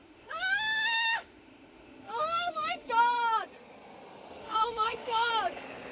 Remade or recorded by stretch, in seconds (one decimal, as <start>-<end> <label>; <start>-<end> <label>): 0.0-2.9 remade; 2.9-4.4 recorded; 4.4-5.3 remade; 5.3-5.9 recorded